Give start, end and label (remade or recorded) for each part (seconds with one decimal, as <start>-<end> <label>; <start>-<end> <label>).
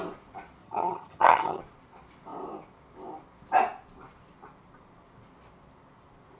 0.0-0.6 recorded; 0.6-1.6 remade; 1.6-6.4 recorded